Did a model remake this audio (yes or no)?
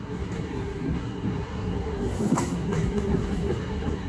yes